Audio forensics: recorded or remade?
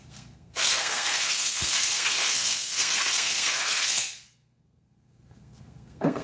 remade